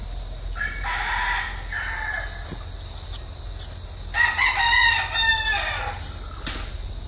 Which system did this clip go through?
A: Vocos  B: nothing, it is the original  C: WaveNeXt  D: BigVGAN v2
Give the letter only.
B